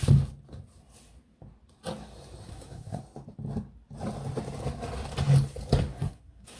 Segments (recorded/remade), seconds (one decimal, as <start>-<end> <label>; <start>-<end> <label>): 0.0-2.5 recorded; 2.5-3.0 remade; 3.0-5.9 recorded; 5.9-6.6 remade